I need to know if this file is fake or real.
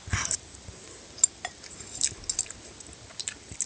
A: real